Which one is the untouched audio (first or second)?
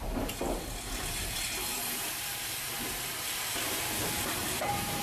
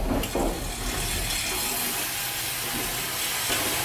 second